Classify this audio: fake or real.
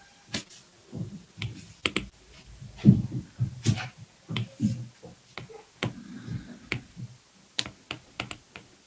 real